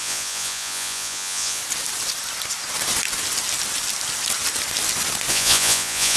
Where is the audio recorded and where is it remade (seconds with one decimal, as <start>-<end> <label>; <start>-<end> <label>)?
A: 0.0-1.6 remade; 1.6-5.3 recorded; 5.3-6.2 remade